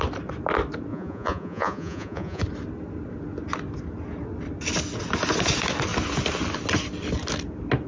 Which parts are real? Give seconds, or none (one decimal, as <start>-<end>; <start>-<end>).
0.0-0.9; 2.4-7.9